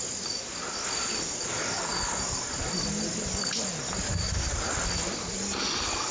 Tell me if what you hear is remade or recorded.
recorded